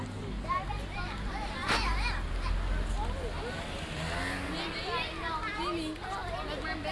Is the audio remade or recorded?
recorded